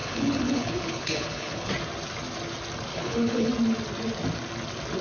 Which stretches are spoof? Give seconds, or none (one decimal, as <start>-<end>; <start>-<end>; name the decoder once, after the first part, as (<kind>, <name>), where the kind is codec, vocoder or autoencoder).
0.0-1.7 (codec, HILCodec); 2.9-3.5